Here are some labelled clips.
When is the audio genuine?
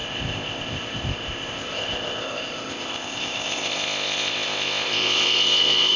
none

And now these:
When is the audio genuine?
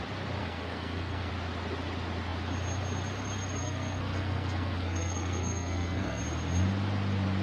0.0-0.4; 1.3-3.6; 6.2-7.4